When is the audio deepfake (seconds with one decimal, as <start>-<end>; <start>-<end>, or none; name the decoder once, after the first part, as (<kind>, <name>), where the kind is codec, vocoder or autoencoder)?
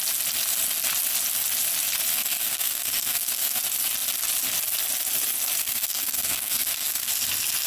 2.1-3.6 (codec, SNAC); 5.6-7.1